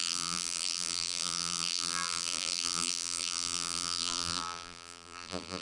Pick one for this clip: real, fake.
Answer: fake